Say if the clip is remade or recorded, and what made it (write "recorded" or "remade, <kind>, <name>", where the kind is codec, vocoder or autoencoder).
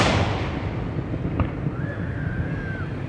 recorded